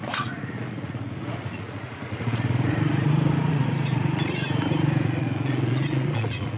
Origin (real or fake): fake